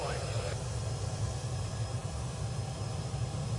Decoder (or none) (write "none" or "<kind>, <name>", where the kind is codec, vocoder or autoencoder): vocoder, BigVGAN v2